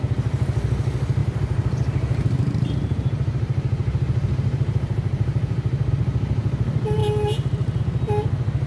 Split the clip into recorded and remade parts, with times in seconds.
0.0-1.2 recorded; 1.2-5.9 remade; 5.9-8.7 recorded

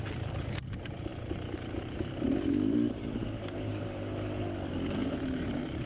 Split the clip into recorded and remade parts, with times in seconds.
0.0-5.0 recorded; 5.0-5.9 remade

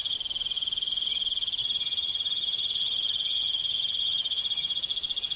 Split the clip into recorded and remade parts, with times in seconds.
0.0-1.6 recorded; 1.6-4.8 remade; 4.8-5.4 recorded

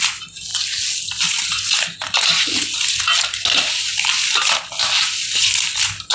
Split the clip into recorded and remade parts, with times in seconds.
0.0-6.1 recorded